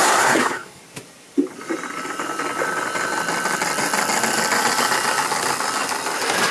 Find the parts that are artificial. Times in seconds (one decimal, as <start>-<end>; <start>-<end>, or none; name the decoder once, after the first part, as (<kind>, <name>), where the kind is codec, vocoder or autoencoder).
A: 0.0-0.8 (codec, SNAC)

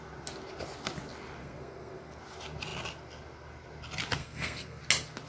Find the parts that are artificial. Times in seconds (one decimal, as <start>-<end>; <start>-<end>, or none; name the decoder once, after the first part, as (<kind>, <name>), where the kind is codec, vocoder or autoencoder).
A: 1.4-2.2 (codec, SNAC); 4.2-4.8

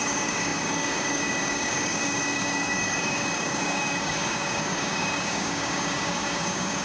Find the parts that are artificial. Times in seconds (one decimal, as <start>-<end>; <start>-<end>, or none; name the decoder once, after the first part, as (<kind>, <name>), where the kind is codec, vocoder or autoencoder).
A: 0.0-6.8 (codec, DAC)

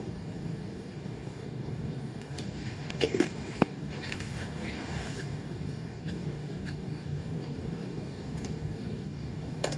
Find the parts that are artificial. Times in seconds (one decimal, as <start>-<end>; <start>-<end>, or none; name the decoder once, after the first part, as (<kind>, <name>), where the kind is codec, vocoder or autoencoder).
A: 0.0-9.8 (codec, DAC)

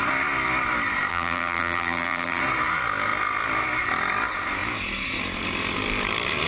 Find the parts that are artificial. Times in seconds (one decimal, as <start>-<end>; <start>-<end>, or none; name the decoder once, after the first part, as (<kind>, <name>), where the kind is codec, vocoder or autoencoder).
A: 1.1-2.4 (vocoder, BigVGAN v2)

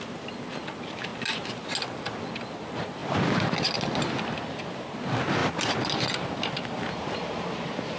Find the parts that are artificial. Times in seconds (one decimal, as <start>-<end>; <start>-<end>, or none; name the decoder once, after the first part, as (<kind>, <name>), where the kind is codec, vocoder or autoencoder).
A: none

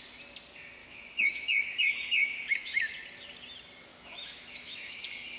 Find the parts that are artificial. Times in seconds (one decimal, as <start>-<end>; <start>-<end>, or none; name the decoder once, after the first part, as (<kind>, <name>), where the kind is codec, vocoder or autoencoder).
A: 0.8-2.9 (autoencoder, DAC-VAE); 3.9-5.0

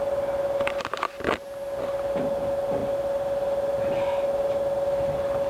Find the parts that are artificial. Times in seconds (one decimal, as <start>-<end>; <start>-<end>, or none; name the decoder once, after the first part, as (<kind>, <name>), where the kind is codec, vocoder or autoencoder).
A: none